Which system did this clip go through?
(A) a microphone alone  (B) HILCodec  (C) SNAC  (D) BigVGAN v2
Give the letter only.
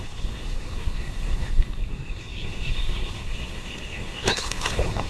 C